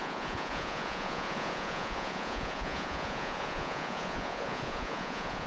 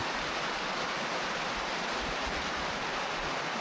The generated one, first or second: first